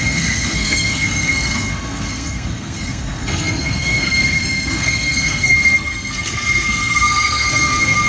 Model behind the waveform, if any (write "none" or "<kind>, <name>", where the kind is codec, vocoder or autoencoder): codec, SNAC